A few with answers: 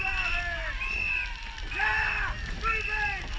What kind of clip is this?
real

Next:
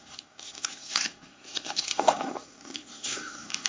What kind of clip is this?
fake